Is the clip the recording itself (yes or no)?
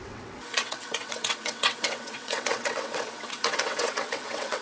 no